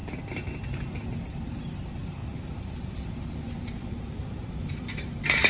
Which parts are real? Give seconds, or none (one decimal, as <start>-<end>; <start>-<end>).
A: 0.0-1.4